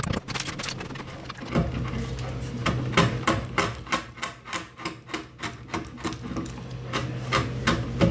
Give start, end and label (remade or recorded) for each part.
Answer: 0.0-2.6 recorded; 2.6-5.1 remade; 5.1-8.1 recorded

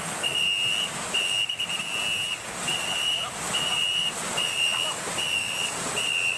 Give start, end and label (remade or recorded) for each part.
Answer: 0.0-6.4 recorded

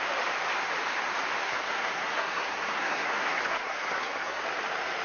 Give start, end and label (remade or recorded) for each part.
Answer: 0.0-1.4 recorded; 1.4-4.4 remade; 4.4-5.0 recorded

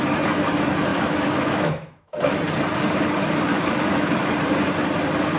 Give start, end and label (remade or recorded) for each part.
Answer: 0.0-0.9 recorded; 0.9-2.4 remade; 2.4-3.5 recorded; 3.5-4.3 remade; 4.3-5.4 recorded

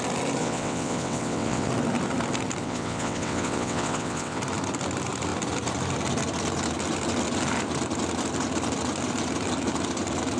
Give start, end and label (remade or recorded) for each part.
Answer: 0.0-0.4 recorded; 0.4-1.7 remade; 1.7-2.6 recorded; 2.6-4.4 remade; 4.4-10.4 recorded